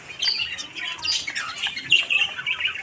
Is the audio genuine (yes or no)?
yes